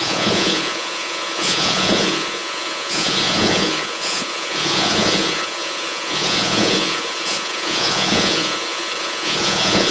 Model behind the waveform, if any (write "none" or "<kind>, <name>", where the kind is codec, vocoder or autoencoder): vocoder, Vocos